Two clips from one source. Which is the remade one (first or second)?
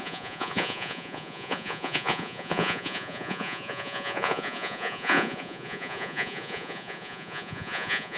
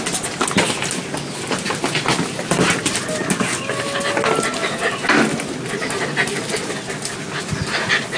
first